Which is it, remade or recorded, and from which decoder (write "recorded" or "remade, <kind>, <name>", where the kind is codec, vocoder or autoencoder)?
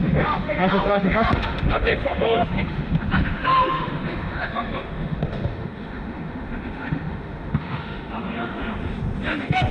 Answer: remade, autoencoder, DAC-VAE